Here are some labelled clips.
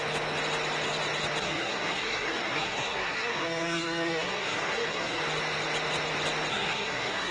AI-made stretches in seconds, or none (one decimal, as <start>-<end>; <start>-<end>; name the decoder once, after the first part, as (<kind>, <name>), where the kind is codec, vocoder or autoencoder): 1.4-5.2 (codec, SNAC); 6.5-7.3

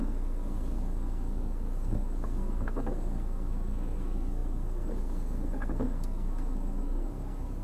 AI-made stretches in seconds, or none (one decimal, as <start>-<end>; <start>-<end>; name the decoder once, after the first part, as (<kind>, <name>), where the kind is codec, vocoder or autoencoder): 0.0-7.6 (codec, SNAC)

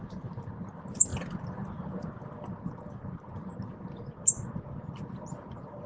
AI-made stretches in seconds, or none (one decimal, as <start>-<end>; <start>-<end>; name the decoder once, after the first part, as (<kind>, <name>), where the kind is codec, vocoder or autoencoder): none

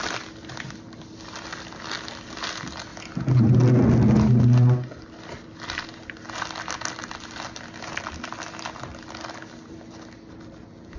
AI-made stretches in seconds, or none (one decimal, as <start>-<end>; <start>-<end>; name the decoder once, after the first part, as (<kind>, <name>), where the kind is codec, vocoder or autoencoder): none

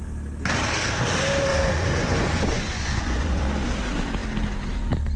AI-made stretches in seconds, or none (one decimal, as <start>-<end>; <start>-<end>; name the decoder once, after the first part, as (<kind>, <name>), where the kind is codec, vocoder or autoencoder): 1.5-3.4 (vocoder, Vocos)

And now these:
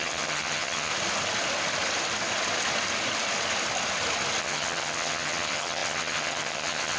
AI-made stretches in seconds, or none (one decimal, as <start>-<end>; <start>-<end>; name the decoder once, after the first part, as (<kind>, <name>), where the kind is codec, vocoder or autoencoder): 0.0-0.9 (vocoder, HiFi-GAN); 4.4-7.0

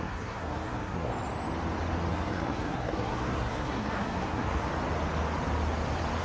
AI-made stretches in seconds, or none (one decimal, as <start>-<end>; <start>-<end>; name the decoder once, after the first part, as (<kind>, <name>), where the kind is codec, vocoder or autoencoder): 0.0-1.1 (codec, SNAC); 2.1-4.7